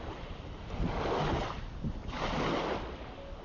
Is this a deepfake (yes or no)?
no